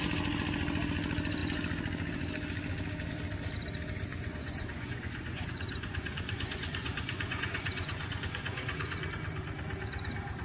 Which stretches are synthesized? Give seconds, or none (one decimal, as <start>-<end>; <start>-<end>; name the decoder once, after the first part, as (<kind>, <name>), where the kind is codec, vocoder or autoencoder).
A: 4.1-9.1 (vocoder, Vocos)